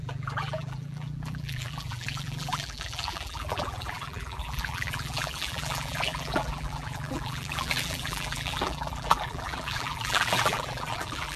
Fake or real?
fake